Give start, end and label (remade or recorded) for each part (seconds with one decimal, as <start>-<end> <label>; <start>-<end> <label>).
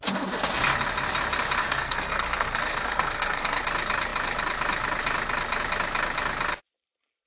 0.0-1.6 recorded; 1.6-3.6 remade; 3.6-7.3 recorded